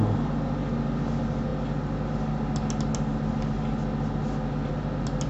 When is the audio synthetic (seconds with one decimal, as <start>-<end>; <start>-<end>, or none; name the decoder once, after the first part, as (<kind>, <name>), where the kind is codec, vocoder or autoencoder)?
none